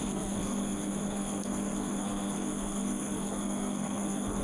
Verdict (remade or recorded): remade